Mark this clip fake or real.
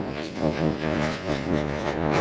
fake